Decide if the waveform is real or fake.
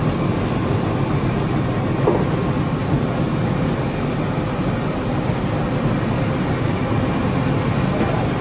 real